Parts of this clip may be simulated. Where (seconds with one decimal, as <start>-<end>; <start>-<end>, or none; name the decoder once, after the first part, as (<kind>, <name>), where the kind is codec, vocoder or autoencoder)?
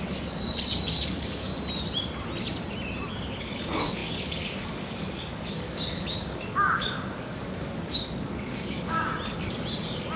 0.0-1.5 (codec, DAC); 3.1-9.1